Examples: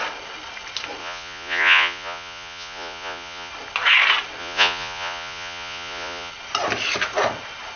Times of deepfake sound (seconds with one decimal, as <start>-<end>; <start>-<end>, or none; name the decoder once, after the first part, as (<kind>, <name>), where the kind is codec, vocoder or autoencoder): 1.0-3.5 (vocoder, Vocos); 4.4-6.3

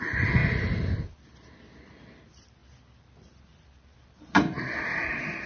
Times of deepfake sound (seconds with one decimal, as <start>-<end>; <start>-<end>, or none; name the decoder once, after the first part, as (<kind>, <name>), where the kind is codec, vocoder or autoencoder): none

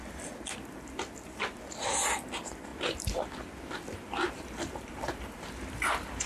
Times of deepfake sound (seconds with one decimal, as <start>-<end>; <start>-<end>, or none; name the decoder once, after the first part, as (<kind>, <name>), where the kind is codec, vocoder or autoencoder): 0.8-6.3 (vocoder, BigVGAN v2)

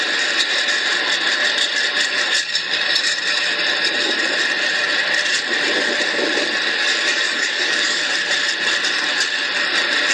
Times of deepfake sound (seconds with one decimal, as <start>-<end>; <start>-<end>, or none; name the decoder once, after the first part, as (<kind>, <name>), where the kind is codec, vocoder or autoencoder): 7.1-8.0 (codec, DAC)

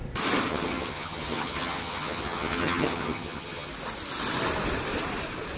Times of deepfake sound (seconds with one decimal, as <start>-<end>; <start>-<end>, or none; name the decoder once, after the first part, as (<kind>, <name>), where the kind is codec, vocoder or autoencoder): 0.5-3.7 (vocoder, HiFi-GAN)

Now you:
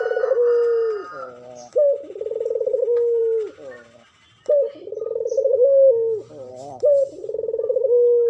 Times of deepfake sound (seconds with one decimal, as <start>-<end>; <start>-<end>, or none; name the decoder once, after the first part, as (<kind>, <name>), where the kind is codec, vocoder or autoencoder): none

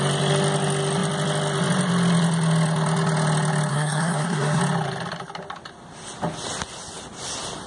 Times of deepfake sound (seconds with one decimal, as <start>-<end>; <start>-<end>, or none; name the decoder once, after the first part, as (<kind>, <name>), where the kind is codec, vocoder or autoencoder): 3.7-4.6 (codec, SNAC)

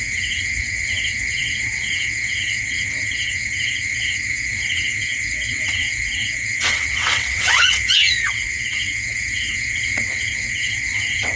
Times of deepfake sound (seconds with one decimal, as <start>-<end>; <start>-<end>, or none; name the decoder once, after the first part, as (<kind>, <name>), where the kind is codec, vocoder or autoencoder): 0.0-11.4 (vocoder, WaveNeXt)